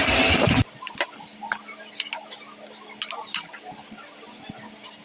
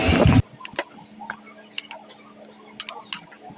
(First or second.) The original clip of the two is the second